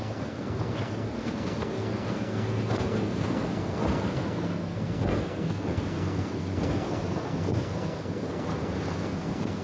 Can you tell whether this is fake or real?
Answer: fake